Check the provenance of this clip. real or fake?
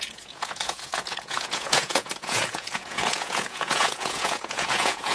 fake